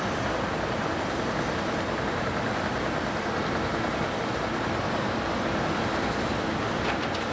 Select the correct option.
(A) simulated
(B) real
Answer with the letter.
B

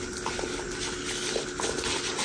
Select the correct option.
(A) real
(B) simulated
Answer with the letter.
A